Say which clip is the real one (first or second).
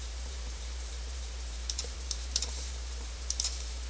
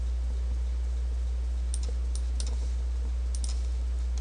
second